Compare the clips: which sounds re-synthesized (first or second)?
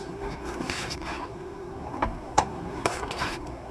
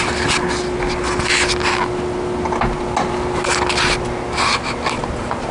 first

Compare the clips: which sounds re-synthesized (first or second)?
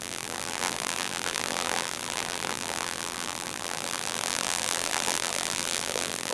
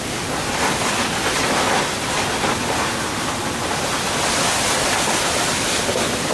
first